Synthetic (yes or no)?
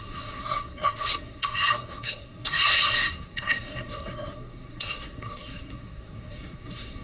yes